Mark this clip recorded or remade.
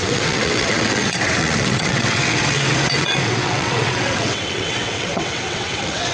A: remade